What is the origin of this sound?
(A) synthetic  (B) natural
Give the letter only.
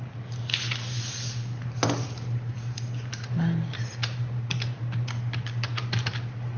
B